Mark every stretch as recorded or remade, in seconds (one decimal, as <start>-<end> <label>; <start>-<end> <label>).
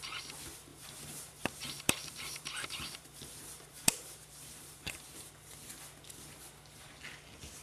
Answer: 0.0-0.7 recorded; 0.7-5.3 remade; 5.3-7.6 recorded